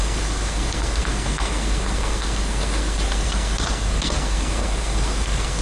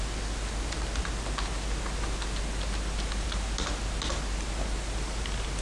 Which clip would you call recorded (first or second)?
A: second